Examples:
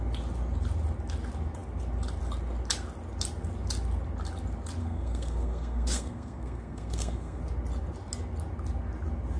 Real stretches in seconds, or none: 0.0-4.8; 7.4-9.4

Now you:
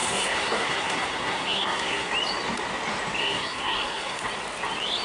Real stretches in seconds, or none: 2.1-3.2; 4.2-5.0

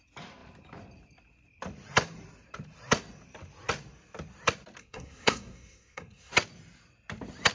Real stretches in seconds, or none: 0.0-4.8; 6.3-7.5

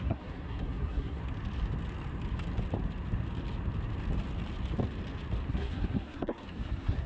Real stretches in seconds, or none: 1.2-5.5